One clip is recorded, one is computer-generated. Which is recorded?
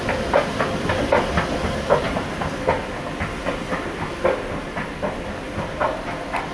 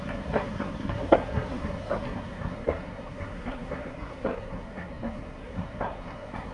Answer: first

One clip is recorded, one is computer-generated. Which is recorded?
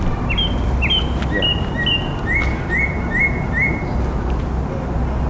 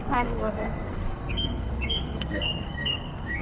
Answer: first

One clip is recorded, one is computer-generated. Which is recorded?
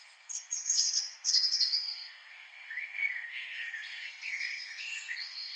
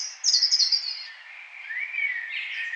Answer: second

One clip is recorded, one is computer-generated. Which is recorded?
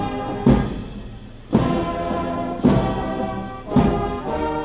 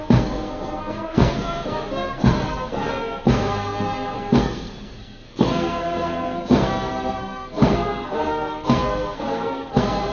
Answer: first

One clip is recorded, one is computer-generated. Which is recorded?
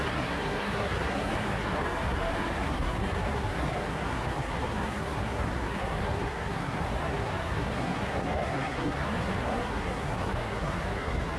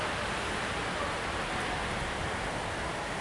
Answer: second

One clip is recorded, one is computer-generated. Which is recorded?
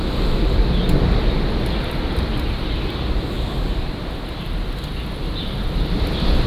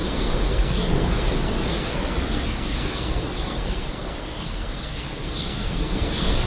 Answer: first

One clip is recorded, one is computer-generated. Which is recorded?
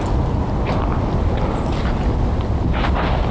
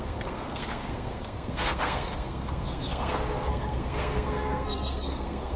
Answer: first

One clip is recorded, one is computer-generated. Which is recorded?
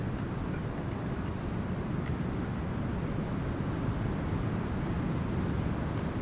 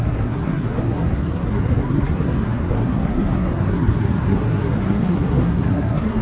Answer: first